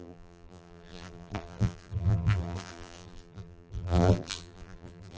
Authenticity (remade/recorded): remade